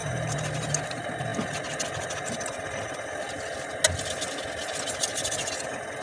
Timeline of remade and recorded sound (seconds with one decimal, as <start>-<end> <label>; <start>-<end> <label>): 0.0-0.7 remade; 0.7-6.0 recorded